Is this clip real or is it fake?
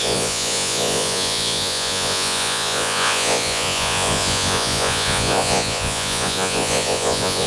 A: fake